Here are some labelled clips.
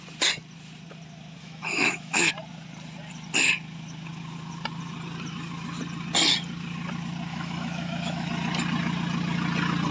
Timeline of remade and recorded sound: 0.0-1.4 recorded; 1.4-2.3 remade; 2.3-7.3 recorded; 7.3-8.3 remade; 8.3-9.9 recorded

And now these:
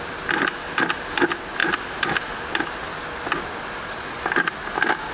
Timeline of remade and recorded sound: 0.0-5.1 recorded

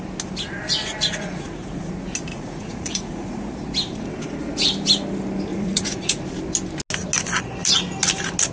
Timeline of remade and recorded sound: 0.0-0.8 recorded; 0.8-1.9 remade; 1.9-2.3 recorded; 2.3-3.5 remade; 3.5-5.5 recorded; 5.5-6.2 remade; 6.2-8.5 recorded

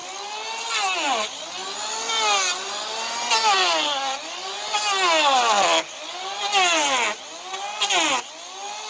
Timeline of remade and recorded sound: 0.0-8.9 recorded

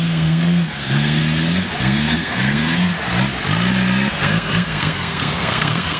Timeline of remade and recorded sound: 0.0-1.2 remade; 1.2-1.8 recorded; 1.8-2.9 remade; 2.9-4.1 recorded; 4.1-6.0 remade

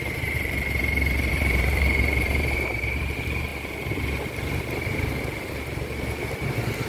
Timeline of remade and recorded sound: 0.0-3.5 remade; 3.5-4.8 recorded; 4.8-6.9 remade

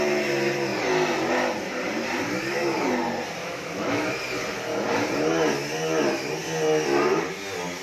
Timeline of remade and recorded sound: 0.0-3.4 recorded; 3.4-4.1 remade; 4.1-7.8 recorded